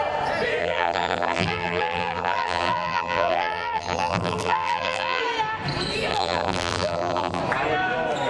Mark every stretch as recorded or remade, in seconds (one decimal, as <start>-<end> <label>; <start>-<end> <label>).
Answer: 0.0-0.6 recorded; 0.6-5.2 remade; 5.2-6.1 recorded; 6.1-7.4 remade; 7.4-8.3 recorded